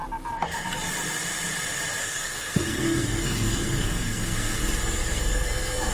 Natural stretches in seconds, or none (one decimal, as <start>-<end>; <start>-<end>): 0.0-2.0; 4.6-5.1